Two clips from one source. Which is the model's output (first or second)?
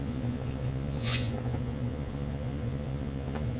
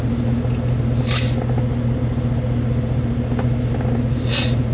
first